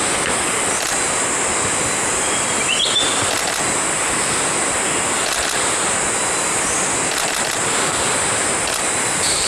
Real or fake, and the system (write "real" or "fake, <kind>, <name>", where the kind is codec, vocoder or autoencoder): real